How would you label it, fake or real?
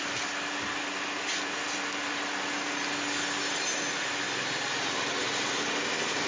real